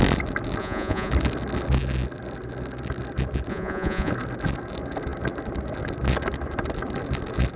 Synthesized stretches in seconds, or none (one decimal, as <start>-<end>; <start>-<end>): 0.6-1.1; 3.5-4.1